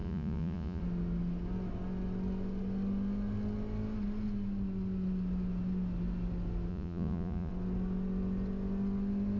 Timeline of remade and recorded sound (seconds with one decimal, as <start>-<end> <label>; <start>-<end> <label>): 0.0-0.8 remade; 0.8-6.7 recorded; 6.7-7.5 remade; 7.5-9.4 recorded